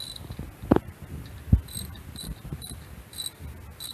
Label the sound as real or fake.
real